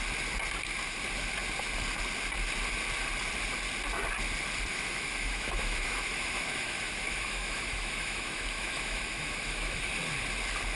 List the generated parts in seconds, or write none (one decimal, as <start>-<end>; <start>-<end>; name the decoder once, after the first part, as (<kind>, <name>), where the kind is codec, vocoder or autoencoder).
4.7-9.9 (autoencoder, DAC-VAE)